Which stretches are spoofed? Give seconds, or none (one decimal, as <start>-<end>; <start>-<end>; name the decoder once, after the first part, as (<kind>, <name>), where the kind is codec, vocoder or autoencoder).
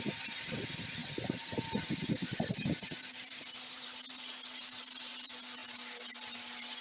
1.0-5.1 (vocoder, BigVGAN v2); 5.6-6.8